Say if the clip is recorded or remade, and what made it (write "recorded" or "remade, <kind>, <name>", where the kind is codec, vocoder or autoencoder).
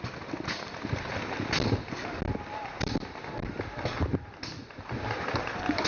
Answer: recorded